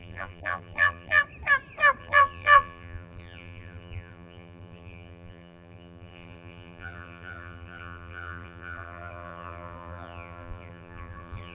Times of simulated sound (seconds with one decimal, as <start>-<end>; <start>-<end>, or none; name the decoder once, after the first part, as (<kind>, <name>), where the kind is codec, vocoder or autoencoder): 0.0-1.2 (vocoder, BigVGAN v2); 2.0-11.5